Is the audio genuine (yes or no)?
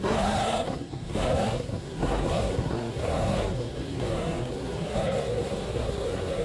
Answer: no